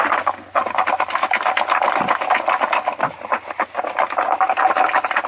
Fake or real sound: real